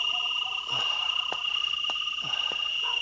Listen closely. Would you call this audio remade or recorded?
remade